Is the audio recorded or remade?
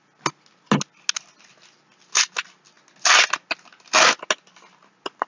recorded